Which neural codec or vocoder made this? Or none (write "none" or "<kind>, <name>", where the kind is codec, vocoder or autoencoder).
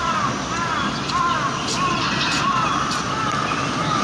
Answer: none